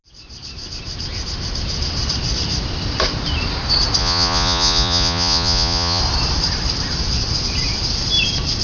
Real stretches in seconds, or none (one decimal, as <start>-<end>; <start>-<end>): 0.0-4.0; 6.0-8.6